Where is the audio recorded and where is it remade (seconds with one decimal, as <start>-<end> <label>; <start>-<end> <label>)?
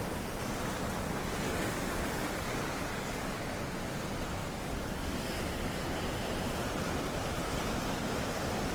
0.0-1.3 recorded; 1.3-3.5 remade; 3.5-4.4 recorded; 4.4-6.0 remade; 6.0-8.7 recorded